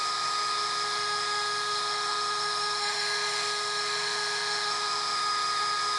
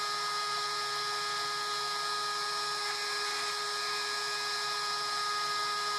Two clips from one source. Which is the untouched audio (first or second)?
second